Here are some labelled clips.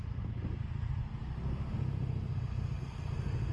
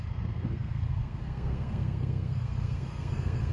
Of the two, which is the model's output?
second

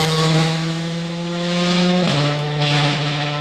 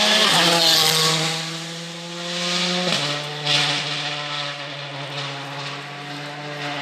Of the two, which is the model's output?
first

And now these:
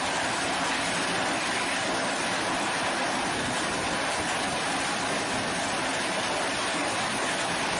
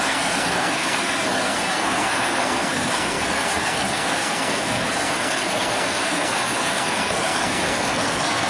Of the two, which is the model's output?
second